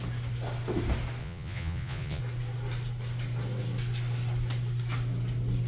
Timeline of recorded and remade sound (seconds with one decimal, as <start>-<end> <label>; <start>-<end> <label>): 0.0-1.2 recorded; 1.2-2.2 remade; 2.2-5.7 recorded